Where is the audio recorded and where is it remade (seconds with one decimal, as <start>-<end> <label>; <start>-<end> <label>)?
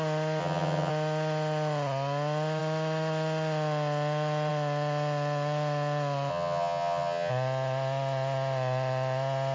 0.0-0.4 recorded; 0.4-0.9 remade; 0.9-6.3 recorded; 6.3-7.3 remade; 7.3-9.5 recorded